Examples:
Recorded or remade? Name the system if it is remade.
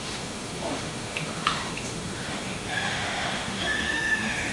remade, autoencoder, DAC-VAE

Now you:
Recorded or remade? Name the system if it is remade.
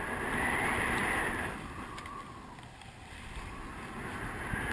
recorded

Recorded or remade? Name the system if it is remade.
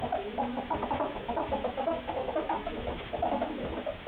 remade, autoencoder, DAC-VAE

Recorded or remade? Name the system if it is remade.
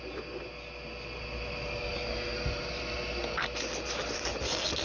recorded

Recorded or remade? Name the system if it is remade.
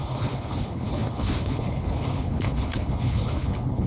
remade, codec, HILCodec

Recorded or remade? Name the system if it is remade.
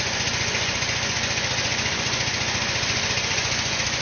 remade, vocoder, Vocos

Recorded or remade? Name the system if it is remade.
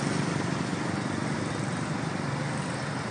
recorded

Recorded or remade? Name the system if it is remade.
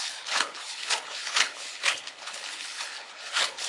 remade, codec, HILCodec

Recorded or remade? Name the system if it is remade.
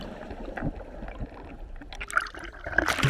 recorded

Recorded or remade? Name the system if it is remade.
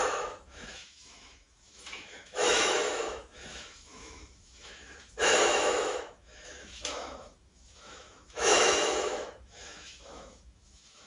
remade, autoencoder, DAC-VAE